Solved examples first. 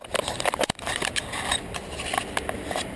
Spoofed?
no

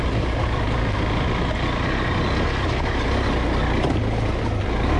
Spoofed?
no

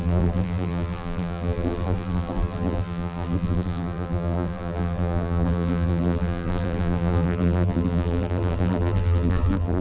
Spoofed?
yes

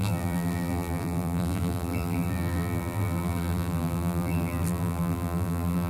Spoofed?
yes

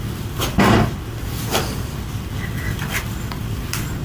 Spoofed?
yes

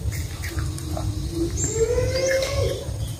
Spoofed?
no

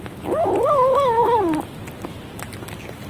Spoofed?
no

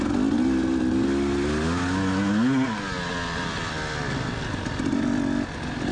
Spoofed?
no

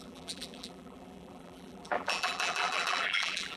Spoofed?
yes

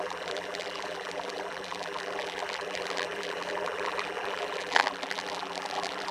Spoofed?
yes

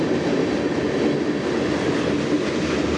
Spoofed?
no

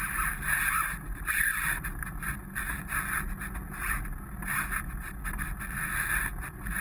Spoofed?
no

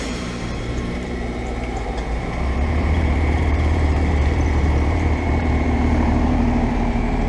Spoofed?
yes